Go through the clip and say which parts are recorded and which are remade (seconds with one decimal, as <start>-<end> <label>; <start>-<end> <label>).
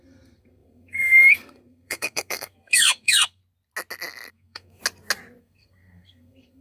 0.0-3.4 remade; 3.4-4.3 recorded; 4.3-4.8 remade; 4.8-5.4 recorded; 5.4-6.6 remade